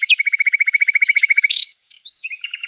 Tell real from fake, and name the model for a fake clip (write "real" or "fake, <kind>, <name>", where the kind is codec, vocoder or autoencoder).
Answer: fake, codec, DAC